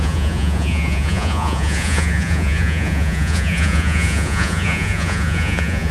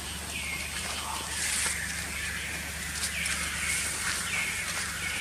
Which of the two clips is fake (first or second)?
first